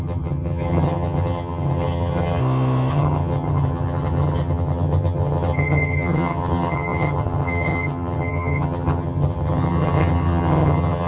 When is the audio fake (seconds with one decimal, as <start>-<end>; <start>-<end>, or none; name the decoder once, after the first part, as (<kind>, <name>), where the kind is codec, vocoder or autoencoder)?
0.0-2.4 (vocoder, HiFi-GAN); 2.9-11.1